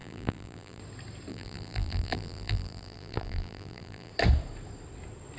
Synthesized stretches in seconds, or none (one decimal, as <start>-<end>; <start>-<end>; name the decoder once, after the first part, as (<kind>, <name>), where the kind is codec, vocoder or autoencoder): 0.0-0.8 (vocoder, BigVGAN v2); 1.3-4.1